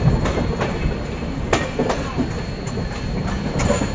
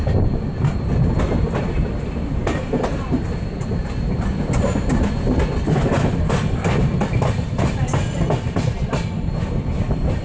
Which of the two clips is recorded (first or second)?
first